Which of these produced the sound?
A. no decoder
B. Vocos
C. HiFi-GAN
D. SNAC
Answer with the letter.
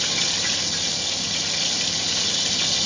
A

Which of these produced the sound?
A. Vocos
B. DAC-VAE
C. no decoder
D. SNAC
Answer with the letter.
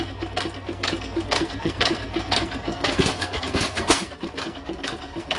D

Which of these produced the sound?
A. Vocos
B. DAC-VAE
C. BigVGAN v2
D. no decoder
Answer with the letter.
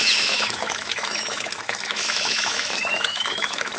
B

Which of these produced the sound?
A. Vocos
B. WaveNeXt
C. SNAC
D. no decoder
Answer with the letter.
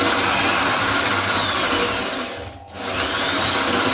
D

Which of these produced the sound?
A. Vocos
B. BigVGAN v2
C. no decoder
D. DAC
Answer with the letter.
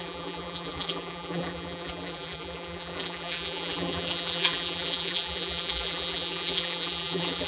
B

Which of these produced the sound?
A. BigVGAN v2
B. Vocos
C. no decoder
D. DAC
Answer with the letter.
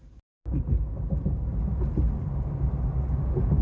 C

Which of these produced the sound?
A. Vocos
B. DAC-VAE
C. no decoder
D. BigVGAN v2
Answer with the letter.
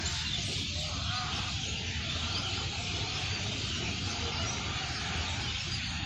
C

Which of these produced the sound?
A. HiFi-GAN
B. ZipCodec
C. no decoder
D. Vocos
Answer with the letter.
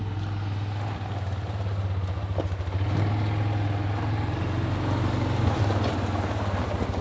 C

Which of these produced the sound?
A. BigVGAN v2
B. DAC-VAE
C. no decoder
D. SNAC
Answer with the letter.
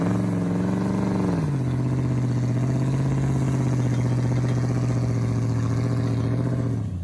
C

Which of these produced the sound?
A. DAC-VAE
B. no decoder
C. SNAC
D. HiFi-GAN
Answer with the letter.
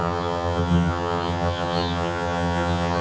D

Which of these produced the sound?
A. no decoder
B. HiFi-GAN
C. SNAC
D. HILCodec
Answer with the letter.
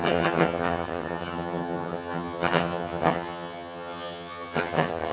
B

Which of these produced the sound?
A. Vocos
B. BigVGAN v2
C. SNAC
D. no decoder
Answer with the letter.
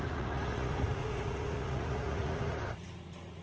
A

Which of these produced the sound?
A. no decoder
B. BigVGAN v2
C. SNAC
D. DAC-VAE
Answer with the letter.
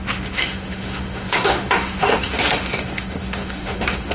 D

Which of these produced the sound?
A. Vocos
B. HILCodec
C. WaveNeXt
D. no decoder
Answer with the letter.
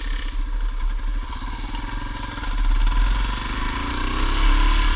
D